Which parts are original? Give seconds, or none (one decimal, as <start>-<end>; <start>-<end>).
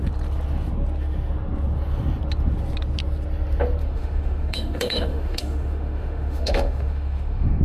0.0-3.8